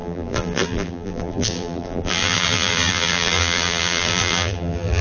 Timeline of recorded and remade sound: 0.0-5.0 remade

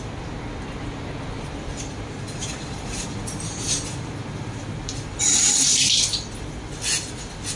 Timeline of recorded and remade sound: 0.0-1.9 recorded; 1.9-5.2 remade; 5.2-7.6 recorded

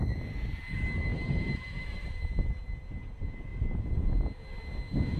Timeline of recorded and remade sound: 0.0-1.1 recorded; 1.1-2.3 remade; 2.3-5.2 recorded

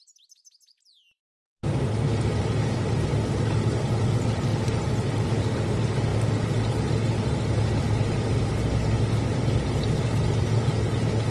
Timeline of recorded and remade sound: 0.0-1.6 remade; 1.6-2.8 recorded; 2.8-4.5 remade; 4.5-5.3 recorded; 5.3-6.1 remade; 6.1-10.0 recorded; 10.0-11.3 remade

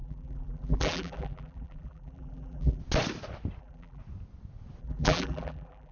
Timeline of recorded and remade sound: 0.0-2.8 remade; 2.8-3.6 recorded; 3.6-4.0 remade; 4.0-4.8 recorded; 4.8-5.9 remade